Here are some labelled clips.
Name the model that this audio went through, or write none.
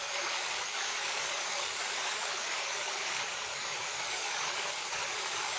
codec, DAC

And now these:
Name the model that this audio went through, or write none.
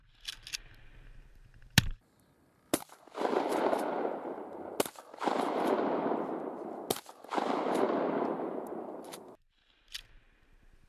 none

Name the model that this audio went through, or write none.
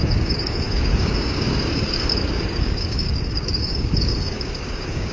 codec, DAC